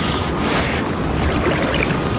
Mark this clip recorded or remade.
recorded